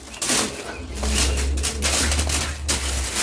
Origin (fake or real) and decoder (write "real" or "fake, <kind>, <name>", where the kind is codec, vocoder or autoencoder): real